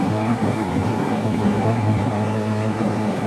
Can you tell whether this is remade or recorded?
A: remade